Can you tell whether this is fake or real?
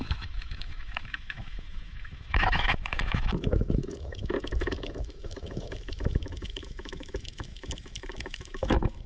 fake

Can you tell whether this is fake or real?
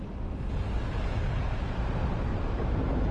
real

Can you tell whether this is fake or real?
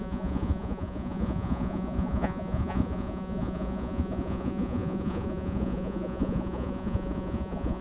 fake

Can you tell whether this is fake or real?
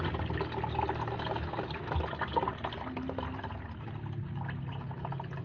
real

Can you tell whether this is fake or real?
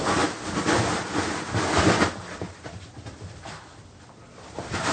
real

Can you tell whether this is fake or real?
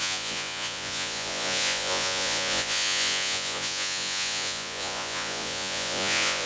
fake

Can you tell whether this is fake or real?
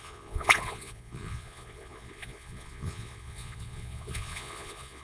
fake